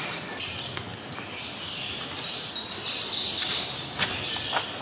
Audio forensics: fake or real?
real